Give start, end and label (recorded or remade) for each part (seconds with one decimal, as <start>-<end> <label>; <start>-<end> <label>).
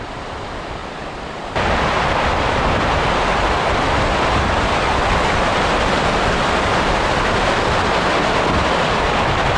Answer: 0.0-9.6 recorded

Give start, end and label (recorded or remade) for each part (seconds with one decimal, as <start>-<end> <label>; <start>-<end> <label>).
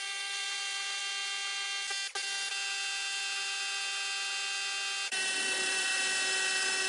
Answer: 0.0-1.0 remade; 1.0-5.1 recorded; 5.1-5.9 remade; 5.9-6.9 recorded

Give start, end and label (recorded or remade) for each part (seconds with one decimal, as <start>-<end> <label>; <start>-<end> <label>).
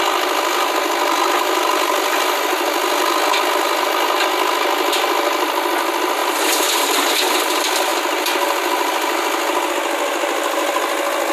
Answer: 0.0-11.3 recorded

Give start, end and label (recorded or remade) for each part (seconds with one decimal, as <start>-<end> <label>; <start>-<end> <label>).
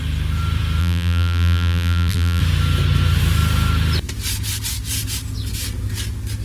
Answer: 0.0-0.8 recorded; 0.8-2.4 remade; 2.4-6.4 recorded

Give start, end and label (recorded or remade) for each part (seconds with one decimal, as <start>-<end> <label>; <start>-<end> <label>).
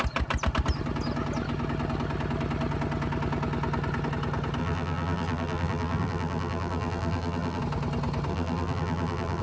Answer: 0.0-4.6 recorded; 4.6-7.6 remade; 7.6-8.3 recorded; 8.3-9.4 remade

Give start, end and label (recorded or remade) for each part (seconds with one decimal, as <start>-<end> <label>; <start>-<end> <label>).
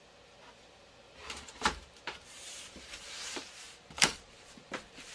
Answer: 0.0-1.2 recorded; 1.2-4.3 remade; 4.3-5.1 recorded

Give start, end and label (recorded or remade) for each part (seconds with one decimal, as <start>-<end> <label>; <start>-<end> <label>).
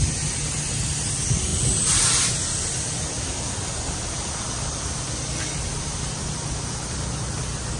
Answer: 0.0-1.5 recorded; 1.5-6.1 remade; 6.1-7.8 recorded